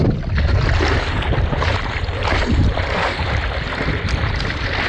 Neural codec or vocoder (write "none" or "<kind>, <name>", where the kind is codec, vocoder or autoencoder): none